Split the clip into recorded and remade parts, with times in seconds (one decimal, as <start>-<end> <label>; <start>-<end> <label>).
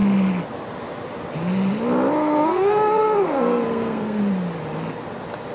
0.0-2.2 recorded; 2.2-4.2 remade; 4.2-5.5 recorded